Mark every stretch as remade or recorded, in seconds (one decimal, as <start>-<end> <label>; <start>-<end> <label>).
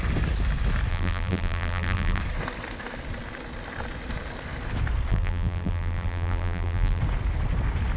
0.0-0.9 recorded; 0.9-2.2 remade; 2.2-5.1 recorded; 5.1-7.0 remade; 7.0-8.0 recorded